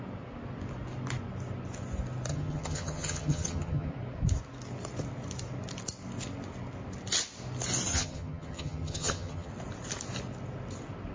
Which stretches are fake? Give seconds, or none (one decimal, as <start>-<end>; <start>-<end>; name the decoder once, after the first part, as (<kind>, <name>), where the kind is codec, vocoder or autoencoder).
2.3-3.9 (vocoder, HiFi-GAN); 7.9-9.5